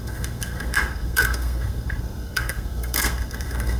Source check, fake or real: fake